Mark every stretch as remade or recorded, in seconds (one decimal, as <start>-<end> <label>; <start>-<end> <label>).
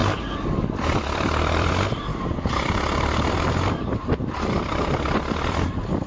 0.0-1.7 remade; 1.7-2.1 recorded; 2.1-6.1 remade